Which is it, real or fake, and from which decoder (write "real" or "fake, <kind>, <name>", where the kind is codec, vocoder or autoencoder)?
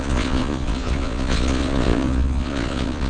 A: fake, vocoder, Vocos